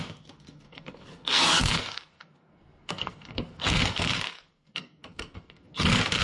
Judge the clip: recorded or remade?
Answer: remade